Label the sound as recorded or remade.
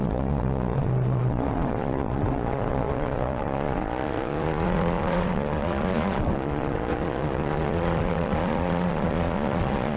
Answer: remade